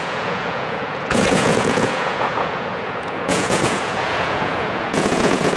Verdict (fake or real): fake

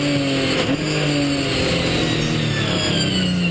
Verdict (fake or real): real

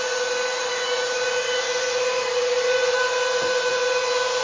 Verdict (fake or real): fake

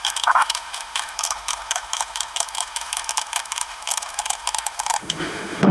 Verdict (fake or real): fake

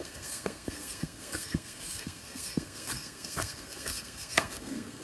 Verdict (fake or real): fake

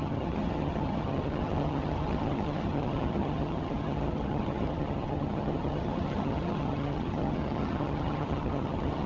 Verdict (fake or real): fake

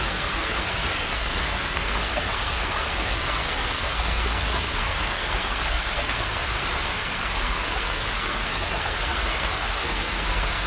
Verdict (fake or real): fake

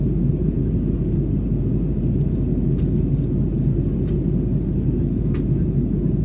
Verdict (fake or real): real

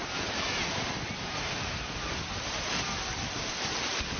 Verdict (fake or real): real